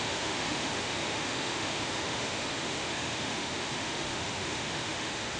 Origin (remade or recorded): remade